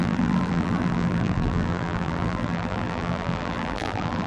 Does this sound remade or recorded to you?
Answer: remade